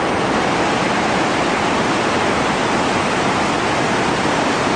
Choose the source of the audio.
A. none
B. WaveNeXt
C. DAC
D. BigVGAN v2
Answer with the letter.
A